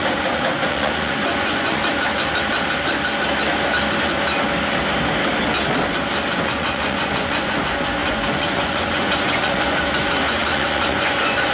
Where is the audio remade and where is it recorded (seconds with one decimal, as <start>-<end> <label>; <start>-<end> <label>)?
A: 0.0-1.8 remade; 1.8-6.3 recorded; 6.3-11.5 remade